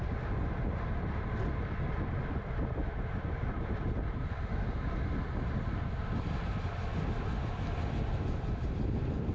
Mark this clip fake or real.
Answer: real